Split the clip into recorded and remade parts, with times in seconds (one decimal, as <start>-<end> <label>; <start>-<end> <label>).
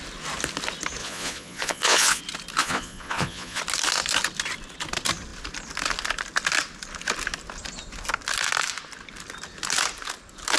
0.0-1.0 recorded; 1.0-2.2 remade; 2.2-2.6 recorded; 2.6-3.6 remade; 3.6-10.6 recorded